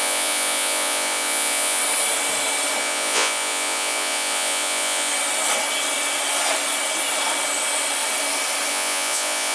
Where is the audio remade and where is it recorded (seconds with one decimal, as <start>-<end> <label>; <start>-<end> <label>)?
0.0-1.8 remade; 1.8-2.8 recorded; 2.8-5.1 remade; 5.1-8.7 recorded; 8.7-9.5 remade